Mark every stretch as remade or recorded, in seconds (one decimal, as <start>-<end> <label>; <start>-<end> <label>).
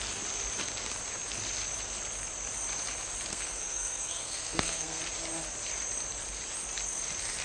0.0-3.3 recorded; 3.3-5.0 remade; 5.0-7.4 recorded